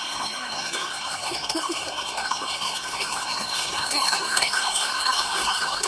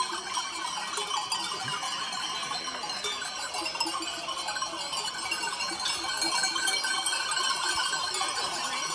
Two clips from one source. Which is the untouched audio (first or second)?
second